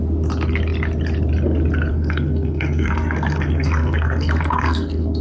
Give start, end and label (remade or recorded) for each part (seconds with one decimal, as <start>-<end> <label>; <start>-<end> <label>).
0.0-1.9 recorded; 1.9-5.2 remade